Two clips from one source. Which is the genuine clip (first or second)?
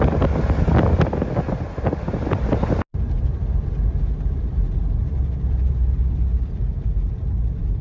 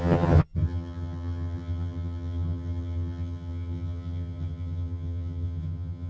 first